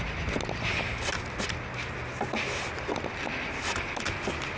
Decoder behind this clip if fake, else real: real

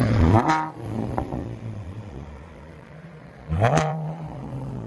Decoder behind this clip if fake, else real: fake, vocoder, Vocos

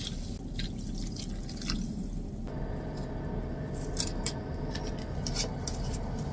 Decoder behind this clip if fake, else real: real